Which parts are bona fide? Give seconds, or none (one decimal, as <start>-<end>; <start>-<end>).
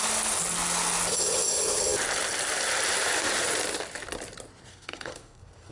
0.0-4.7